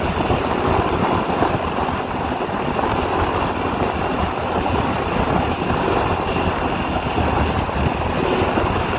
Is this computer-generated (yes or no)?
no